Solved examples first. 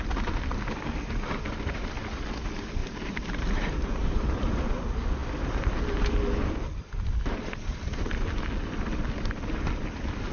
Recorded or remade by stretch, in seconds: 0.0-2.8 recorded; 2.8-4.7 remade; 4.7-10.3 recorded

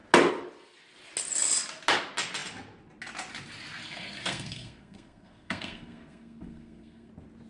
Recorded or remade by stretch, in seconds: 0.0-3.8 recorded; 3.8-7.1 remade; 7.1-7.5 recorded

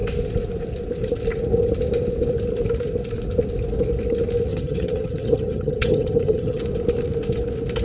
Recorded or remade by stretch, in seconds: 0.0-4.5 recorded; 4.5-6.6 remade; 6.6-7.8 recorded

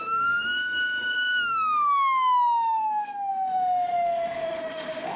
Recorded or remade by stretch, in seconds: 0.0-5.2 remade

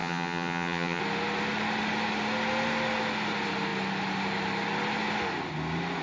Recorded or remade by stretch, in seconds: 0.0-1.0 remade; 1.0-6.0 recorded

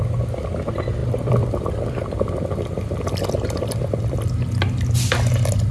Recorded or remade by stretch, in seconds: 0.0-1.0 recorded; 1.0-4.4 remade; 4.4-5.7 recorded

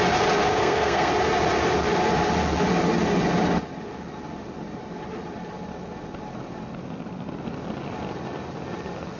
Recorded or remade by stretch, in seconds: 0.0-0.5 recorded; 0.5-1.1 remade; 1.1-9.2 recorded

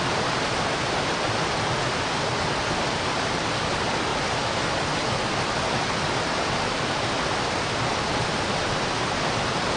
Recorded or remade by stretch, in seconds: 0.0-9.8 recorded